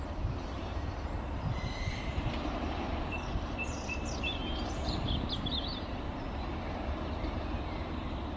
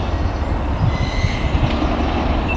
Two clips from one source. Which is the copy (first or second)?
first